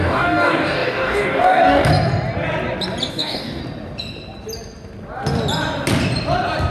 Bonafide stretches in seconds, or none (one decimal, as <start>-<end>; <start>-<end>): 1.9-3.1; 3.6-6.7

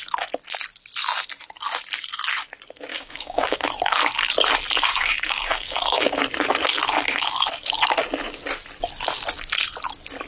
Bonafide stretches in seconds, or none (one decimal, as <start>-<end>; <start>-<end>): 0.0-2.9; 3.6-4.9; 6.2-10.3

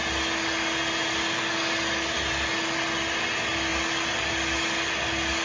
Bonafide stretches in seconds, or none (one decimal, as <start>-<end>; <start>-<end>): 0.0-5.4